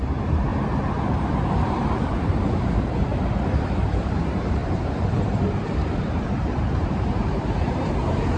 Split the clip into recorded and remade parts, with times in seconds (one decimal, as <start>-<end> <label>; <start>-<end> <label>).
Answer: 0.0-0.5 remade; 0.5-1.7 recorded; 1.7-3.1 remade; 3.1-3.8 recorded; 3.8-8.4 remade